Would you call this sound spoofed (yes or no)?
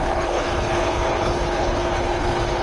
yes